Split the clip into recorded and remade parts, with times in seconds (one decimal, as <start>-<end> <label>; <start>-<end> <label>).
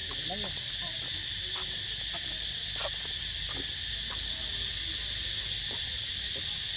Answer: 0.0-6.8 recorded